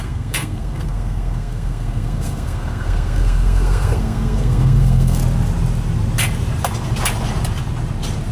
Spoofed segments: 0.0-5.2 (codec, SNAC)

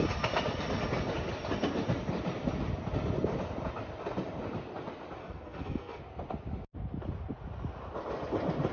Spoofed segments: 5.2-6.0 (codec, SNAC)

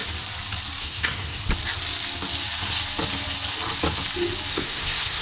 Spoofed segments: 0.8-1.4 (codec, SNAC); 4.5-5.2

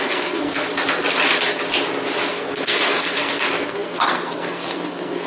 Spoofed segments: 0.0-0.7 (codec, SNAC); 2.3-5.3

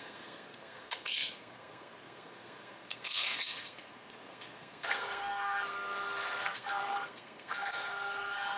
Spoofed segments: 0.0-8.6 (codec, SNAC)

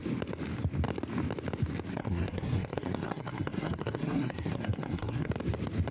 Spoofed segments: 1.9-5.3 (codec, SNAC)

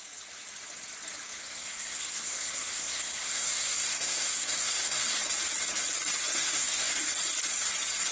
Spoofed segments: 1.4-5.2 (codec, SNAC); 6.3-7.0

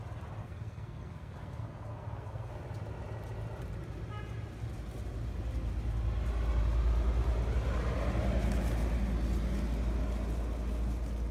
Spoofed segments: 0.4-2.5 (codec, SNAC)